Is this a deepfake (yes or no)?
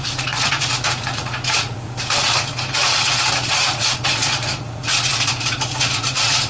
yes